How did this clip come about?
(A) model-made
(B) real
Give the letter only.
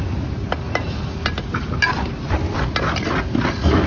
B